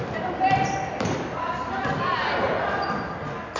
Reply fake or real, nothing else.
real